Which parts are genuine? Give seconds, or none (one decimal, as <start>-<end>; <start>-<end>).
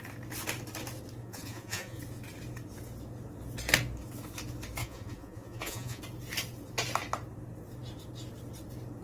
0.0-1.2; 2.0-4.8; 6.0-9.0